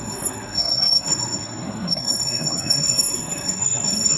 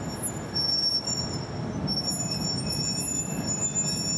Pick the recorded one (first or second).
second